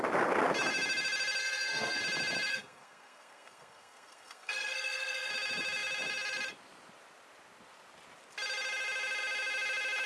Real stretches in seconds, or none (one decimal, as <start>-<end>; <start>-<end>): 0.0-1.4; 2.0-2.5; 5.3-10.1